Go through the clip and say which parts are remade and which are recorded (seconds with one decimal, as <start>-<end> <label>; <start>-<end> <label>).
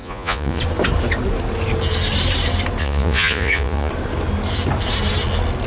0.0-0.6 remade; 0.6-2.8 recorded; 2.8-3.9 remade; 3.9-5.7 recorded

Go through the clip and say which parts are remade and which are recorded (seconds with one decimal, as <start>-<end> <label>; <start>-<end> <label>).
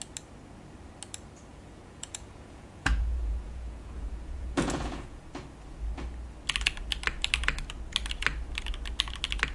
0.0-1.5 recorded; 1.5-5.2 remade; 5.2-9.5 recorded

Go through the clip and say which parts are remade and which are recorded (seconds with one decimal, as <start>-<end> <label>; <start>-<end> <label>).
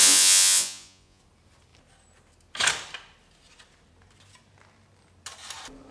0.0-1.2 remade; 1.2-5.9 recorded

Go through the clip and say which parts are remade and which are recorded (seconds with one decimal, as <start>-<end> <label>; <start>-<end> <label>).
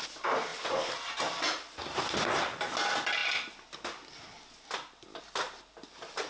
0.0-6.3 recorded